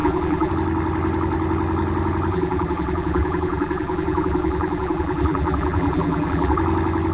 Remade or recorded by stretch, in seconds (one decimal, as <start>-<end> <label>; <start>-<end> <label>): 0.0-0.5 remade; 0.5-2.3 recorded; 2.3-6.6 remade; 6.6-7.1 recorded